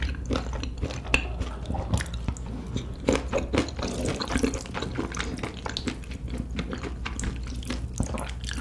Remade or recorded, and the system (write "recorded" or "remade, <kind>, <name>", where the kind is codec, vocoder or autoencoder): recorded